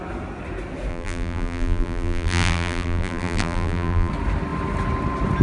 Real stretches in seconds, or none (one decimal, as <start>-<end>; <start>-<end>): 0.0-0.9; 4.1-5.4